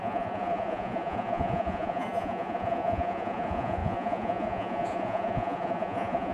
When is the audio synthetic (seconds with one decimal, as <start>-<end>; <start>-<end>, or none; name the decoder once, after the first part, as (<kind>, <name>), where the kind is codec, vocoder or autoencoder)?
0.0-6.3 (vocoder, Vocos)